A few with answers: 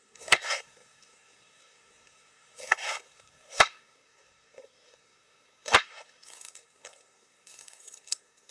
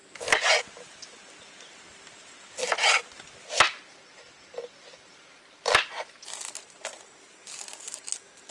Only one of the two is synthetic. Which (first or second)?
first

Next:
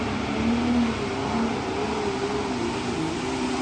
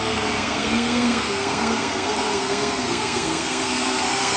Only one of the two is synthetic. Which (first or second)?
second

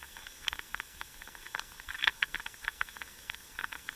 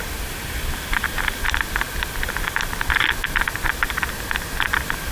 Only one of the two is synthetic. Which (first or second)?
first